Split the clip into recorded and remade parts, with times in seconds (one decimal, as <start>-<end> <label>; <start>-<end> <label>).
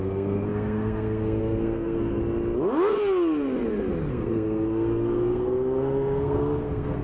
0.0-2.2 remade; 2.2-4.1 recorded; 4.1-7.0 remade